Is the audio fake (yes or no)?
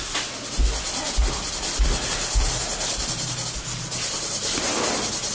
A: no